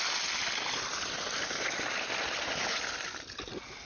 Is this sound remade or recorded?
recorded